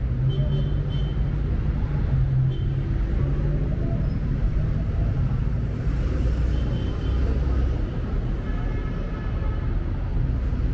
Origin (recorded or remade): recorded